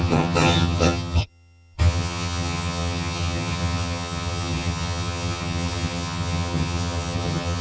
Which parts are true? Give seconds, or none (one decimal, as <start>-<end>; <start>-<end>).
none